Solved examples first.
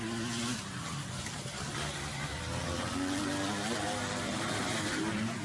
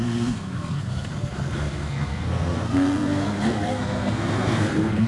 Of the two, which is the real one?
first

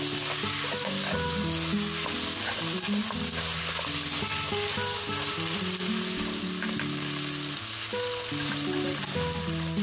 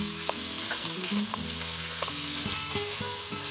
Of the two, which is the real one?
first